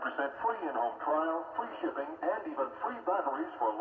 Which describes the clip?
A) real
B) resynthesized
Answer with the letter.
A